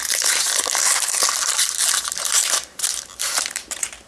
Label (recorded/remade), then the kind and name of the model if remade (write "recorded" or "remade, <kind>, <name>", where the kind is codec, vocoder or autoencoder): remade, vocoder, BigVGAN v2